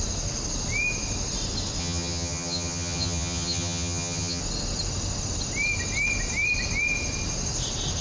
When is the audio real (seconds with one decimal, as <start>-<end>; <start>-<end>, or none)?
0.0-1.8; 4.4-8.0